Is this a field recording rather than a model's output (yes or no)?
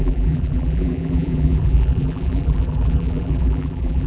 no